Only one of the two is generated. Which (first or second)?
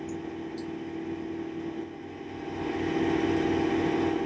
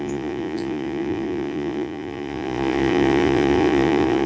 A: second